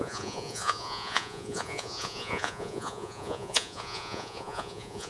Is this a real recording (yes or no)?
no